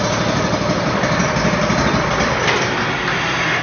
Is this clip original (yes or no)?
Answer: no